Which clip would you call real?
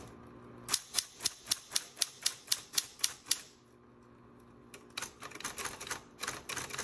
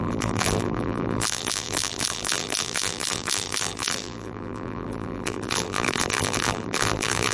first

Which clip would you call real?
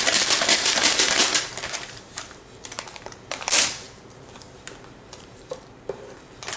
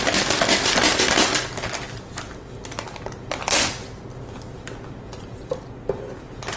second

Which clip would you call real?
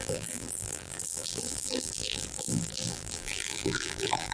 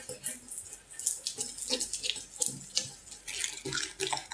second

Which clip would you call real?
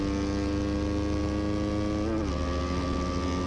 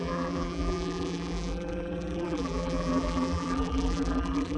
first